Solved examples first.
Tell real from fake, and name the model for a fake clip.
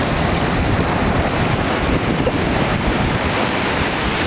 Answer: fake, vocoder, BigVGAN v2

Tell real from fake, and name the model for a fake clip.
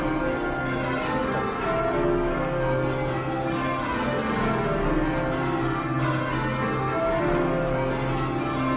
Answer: real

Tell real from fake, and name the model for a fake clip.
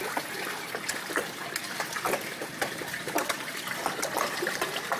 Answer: fake, vocoder, BigVGAN v2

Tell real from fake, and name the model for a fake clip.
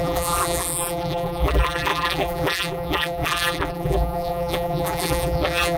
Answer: fake, vocoder, BigVGAN v2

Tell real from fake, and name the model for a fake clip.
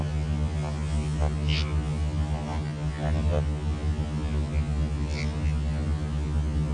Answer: real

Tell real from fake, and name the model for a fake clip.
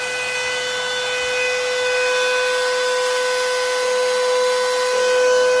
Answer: real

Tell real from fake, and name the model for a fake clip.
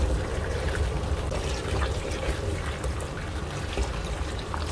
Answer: fake, vocoder, BigVGAN v2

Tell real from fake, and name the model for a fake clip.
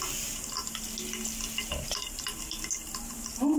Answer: real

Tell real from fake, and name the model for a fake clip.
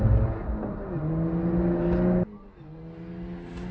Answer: real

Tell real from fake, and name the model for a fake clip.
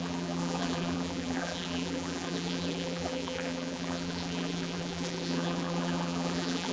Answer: fake, vocoder, BigVGAN v2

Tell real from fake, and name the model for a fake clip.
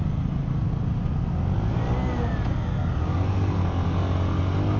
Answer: real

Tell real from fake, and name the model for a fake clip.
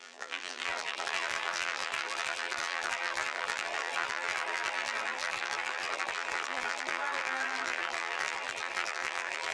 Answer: fake, vocoder, BigVGAN v2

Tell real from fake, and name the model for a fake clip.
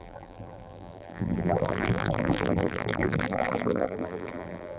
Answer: fake, vocoder, BigVGAN v2